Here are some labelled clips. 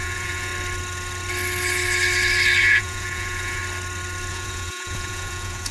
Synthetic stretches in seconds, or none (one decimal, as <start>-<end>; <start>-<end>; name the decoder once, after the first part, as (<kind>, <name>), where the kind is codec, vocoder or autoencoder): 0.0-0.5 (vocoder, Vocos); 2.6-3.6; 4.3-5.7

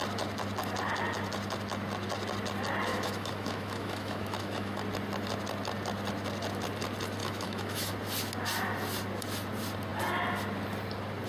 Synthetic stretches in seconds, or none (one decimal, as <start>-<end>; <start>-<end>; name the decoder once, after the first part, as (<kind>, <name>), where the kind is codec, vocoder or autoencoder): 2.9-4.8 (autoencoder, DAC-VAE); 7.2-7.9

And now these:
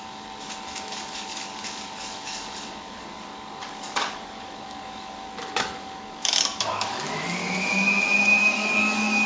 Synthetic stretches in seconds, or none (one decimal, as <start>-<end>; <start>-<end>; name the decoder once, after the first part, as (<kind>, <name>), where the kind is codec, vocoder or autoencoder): 0.0-7.4 (codec, DAC); 8.4-9.3

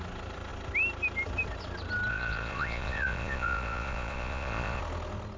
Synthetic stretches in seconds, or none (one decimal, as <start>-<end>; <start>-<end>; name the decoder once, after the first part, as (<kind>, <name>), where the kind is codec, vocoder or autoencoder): 2.1-4.8 (vocoder, Vocos)

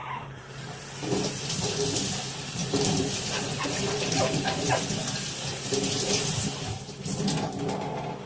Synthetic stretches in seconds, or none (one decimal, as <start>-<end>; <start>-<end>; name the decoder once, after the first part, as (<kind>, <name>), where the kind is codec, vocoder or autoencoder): 0.0-1.5 (vocoder, BigVGAN v2); 2.6-4.7